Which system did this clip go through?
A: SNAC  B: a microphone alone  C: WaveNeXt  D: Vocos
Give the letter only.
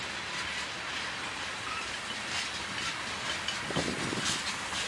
B